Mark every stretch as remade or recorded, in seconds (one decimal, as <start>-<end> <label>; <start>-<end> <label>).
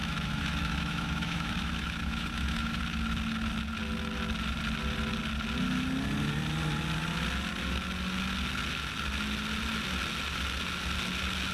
0.0-2.8 remade; 2.8-11.5 recorded